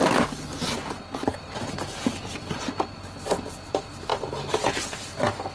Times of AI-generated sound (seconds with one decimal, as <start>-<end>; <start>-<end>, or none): 1.2-2.9